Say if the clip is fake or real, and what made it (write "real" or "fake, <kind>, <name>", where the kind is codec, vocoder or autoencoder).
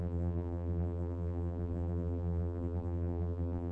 fake, vocoder, BigVGAN v2